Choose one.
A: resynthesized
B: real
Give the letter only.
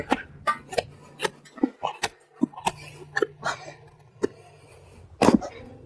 B